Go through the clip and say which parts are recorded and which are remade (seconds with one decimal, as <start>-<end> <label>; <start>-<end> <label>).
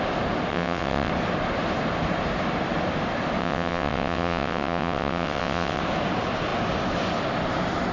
0.0-0.5 recorded; 0.5-1.1 remade; 1.1-3.4 recorded; 3.4-5.8 remade; 5.8-7.9 recorded